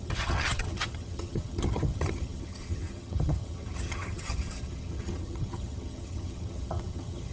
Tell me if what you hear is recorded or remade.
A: remade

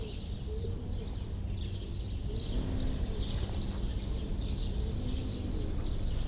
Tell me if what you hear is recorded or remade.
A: recorded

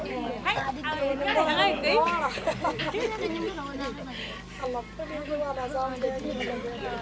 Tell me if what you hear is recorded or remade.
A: recorded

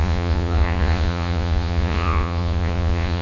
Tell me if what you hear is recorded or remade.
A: remade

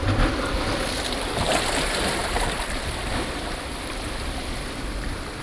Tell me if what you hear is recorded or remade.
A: recorded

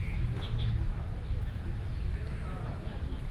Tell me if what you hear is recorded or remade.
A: remade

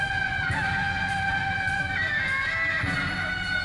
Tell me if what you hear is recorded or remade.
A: recorded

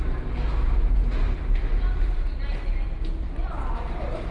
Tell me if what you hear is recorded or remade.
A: recorded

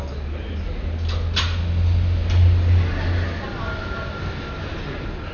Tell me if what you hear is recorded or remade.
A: recorded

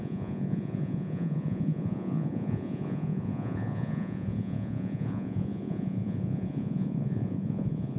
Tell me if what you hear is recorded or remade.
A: remade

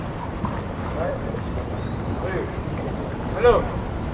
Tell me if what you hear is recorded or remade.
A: remade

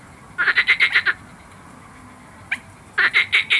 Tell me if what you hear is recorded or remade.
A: recorded